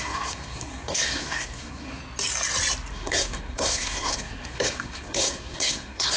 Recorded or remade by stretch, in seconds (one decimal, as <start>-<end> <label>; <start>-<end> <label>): 0.0-2.0 remade; 2.0-2.9 recorded; 2.9-6.2 remade